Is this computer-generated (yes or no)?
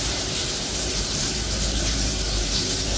yes